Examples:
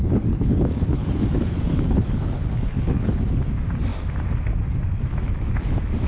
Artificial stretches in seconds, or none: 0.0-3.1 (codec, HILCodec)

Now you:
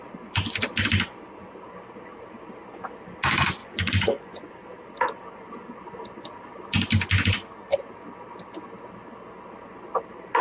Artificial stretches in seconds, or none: 3.6-4.5 (vocoder, Vocos)

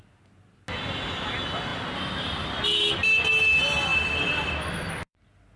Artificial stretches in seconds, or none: none

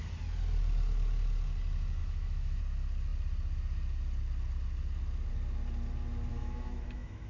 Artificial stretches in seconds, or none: 2.0-2.6 (autoencoder, DAC-VAE); 6.3-7.3

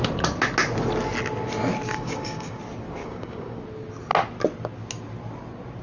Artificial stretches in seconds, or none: 1.9-2.6 (codec, DAC); 3.0-3.6

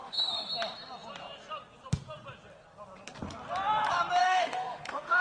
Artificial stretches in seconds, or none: 0.0-0.5 (autoencoder, DAC-VAE); 4.2-5.2

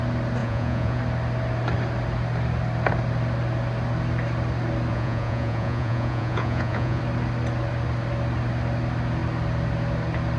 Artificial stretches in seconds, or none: 0.4-1.0 (vocoder, Vocos); 4.9-7.0